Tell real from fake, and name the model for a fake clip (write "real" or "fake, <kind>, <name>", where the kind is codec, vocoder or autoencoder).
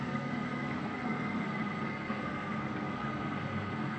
fake, codec, SNAC